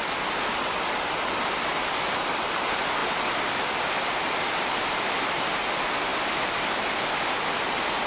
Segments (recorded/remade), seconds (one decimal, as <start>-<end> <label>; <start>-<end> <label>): 0.0-8.1 recorded

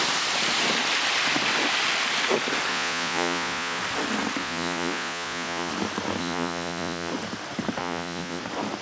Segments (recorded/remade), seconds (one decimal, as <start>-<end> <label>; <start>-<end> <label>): 0.0-2.7 recorded; 2.7-3.8 remade; 3.8-4.4 recorded; 4.4-5.7 remade; 5.7-6.2 recorded; 6.2-7.1 remade; 7.1-7.8 recorded; 7.8-8.4 remade; 8.4-8.8 recorded

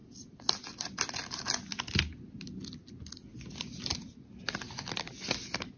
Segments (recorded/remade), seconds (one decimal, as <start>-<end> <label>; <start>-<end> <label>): 0.0-5.8 recorded